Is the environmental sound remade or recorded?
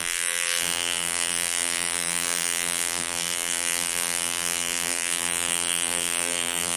remade